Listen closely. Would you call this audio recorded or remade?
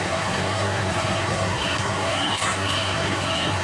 remade